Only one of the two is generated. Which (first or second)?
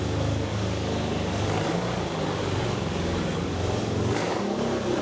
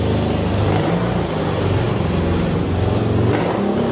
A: first